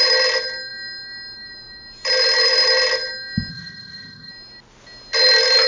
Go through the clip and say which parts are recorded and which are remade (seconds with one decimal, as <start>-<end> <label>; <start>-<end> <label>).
0.0-3.5 recorded; 3.5-4.3 remade; 4.3-5.7 recorded